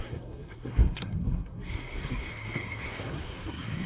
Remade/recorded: remade